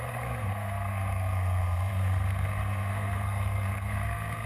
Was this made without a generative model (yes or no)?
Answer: no